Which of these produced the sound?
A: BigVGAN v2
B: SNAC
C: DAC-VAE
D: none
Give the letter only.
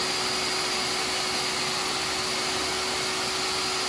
D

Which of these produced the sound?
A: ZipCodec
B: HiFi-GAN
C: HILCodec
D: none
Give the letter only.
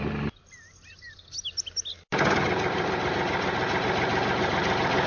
D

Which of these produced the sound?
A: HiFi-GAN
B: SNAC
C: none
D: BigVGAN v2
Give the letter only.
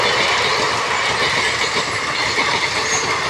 C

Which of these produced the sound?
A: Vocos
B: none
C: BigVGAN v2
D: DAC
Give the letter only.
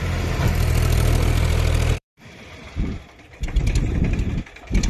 C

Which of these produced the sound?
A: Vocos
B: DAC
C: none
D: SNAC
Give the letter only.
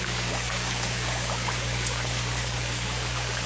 B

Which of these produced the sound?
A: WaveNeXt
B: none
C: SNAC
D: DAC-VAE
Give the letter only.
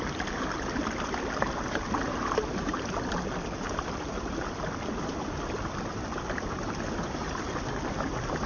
B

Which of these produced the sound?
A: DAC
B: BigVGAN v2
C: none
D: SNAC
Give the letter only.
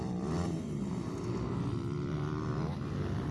C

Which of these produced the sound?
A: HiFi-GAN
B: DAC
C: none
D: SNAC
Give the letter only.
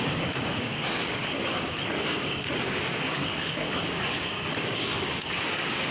B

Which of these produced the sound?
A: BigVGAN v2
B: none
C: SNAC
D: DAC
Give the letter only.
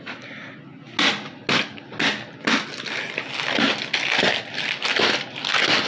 B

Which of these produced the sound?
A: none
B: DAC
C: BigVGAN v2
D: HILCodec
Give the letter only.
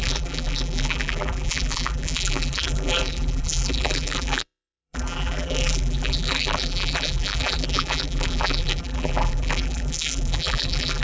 C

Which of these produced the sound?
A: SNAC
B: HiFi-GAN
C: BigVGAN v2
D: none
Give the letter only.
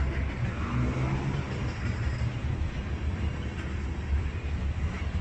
D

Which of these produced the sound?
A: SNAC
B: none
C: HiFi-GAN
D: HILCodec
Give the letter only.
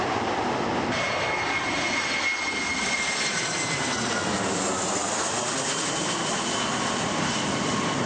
B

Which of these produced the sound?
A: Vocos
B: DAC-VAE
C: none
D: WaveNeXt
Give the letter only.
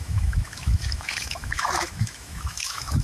B